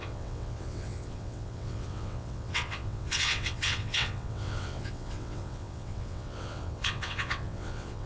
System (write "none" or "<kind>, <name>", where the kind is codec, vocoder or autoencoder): vocoder, WaveNeXt